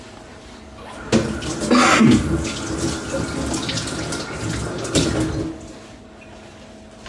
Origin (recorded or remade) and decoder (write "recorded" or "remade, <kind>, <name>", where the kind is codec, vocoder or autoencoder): recorded